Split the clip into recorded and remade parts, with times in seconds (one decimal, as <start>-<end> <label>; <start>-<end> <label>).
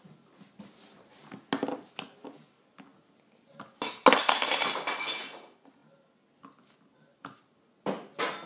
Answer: 0.0-8.5 recorded